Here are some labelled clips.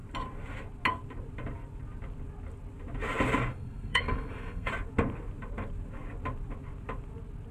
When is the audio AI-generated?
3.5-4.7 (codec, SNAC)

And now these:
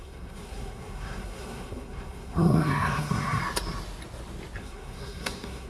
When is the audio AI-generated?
0.0-3.4 (codec, SNAC); 4.6-5.7

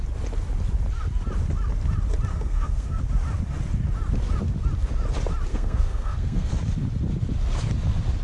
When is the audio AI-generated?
2.3-3.0 (codec, SNAC); 5.5-6.5

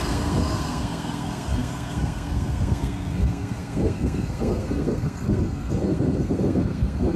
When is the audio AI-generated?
0.0-7.2 (codec, SNAC)

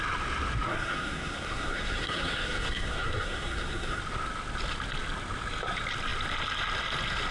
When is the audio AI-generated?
0.7-4.0 (codec, SNAC)

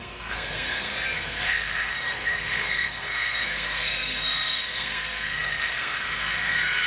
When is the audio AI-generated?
0.0-6.9 (codec, SNAC)

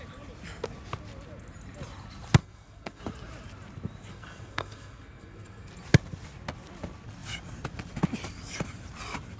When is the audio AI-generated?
2.4-3.0 (codec, SNAC); 4.1-5.7